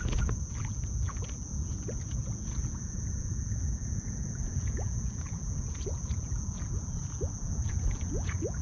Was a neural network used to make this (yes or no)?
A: yes